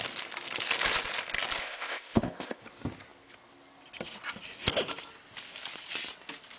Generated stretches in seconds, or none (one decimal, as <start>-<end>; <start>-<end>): 1.6-2.6